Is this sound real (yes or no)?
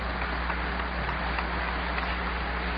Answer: yes